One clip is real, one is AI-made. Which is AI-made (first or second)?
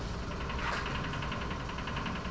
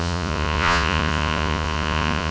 second